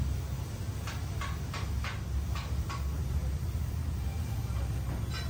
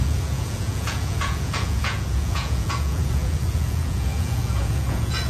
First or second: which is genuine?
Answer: first